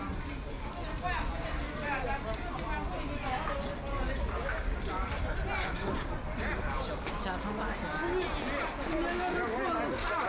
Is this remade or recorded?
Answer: recorded